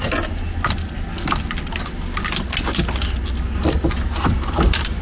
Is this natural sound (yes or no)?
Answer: yes